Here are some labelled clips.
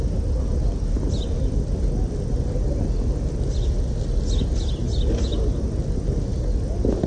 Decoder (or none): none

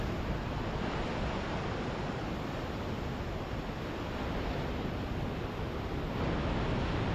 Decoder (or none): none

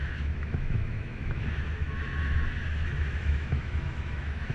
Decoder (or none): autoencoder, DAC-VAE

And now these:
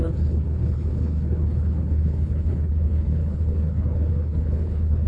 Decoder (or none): codec, HILCodec